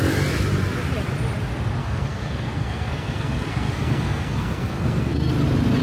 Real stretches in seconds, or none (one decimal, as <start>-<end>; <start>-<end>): 0.0-1.8; 5.3-5.8